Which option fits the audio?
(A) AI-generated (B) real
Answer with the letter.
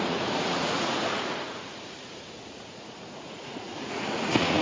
A